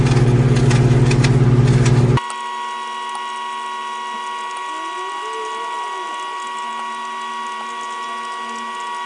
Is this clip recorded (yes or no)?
yes